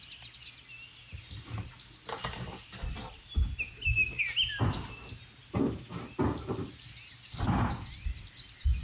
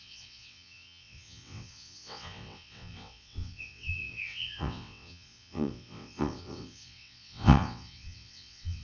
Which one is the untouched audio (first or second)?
first